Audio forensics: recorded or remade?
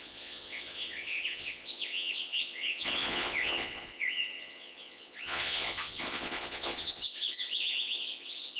remade